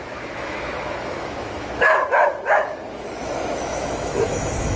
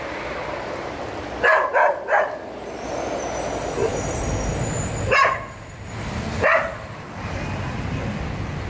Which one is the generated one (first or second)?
first